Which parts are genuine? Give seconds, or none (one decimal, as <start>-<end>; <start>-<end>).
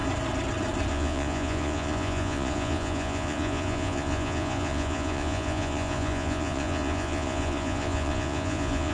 0.0-0.9